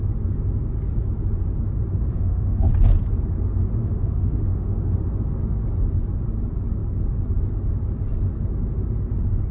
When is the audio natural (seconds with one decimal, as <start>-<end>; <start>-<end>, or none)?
0.0-2.1; 2.7-3.8; 5.0-9.5